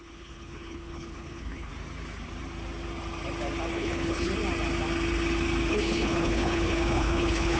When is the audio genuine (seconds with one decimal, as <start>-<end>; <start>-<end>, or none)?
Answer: 1.7-3.7; 4.3-5.7